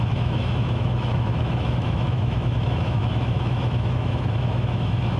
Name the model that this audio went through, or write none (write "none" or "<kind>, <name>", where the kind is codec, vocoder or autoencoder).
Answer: autoencoder, DAC-VAE